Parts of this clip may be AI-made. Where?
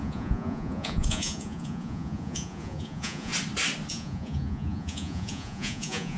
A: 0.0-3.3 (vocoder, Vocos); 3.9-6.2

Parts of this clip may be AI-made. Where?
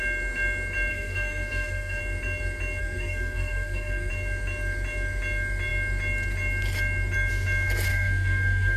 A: 0.9-2.0 (codec, SNAC); 2.8-4.1; 7.9-8.8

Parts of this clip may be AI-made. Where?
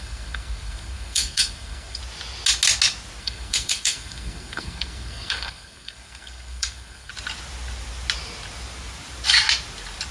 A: 0.0-2.0 (codec, SNAC); 3.2-7.1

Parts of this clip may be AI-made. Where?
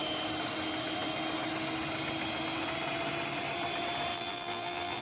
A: 4.1-5.0 (vocoder, BigVGAN v2)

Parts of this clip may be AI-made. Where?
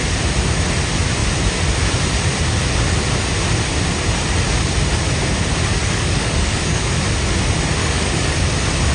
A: 5.8-6.9 (codec, DAC); 7.8-8.4